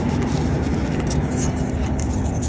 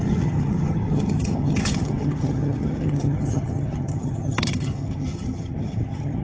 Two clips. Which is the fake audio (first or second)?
second